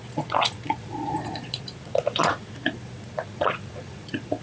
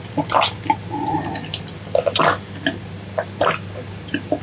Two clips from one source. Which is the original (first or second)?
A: second